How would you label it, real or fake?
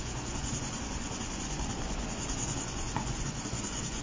fake